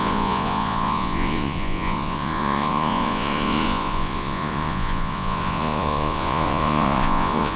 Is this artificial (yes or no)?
yes